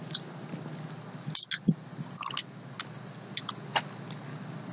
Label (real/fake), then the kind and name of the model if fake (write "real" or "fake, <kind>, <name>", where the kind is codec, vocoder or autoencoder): real